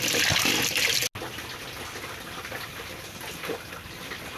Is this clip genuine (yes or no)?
yes